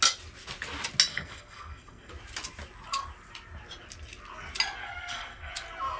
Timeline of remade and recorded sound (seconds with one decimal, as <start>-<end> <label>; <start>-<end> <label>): 0.0-1.1 recorded; 1.1-2.1 remade; 2.1-4.8 recorded; 4.8-5.5 remade; 5.5-6.0 recorded